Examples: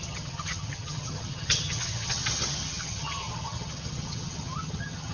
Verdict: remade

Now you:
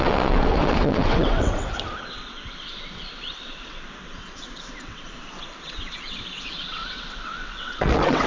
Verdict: remade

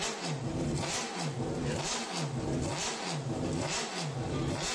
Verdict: recorded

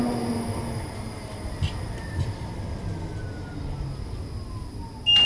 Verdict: recorded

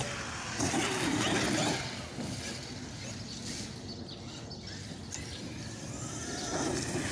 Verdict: recorded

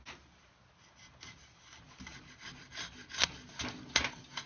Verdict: recorded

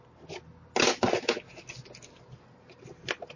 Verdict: recorded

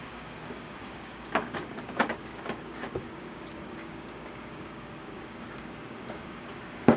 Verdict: remade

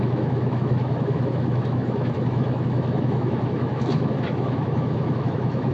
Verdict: remade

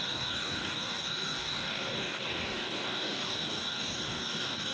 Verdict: remade